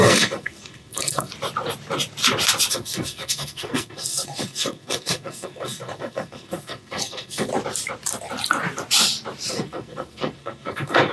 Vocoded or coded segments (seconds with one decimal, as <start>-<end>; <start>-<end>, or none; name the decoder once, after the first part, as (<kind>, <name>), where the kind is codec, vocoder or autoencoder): 0.0-1.3 (codec, SNAC); 2.7-7.5; 9.5-11.1